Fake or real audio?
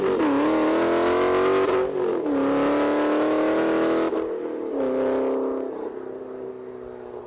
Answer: real